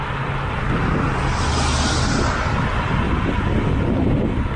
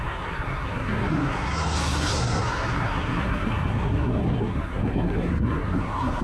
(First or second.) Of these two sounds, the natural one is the first